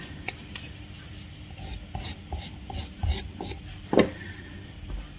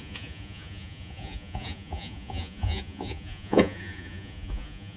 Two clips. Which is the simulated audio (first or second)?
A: second